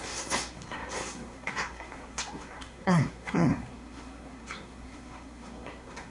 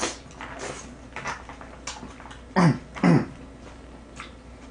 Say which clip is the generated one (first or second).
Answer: first